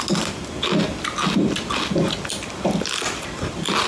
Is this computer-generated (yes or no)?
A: no